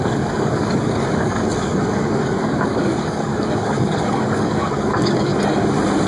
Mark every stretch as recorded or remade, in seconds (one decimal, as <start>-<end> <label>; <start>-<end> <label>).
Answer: 0.0-5.3 remade; 5.3-6.1 recorded